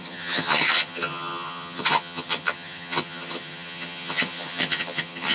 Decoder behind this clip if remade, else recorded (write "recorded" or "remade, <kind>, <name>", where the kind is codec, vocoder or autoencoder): remade, vocoder, HiFi-GAN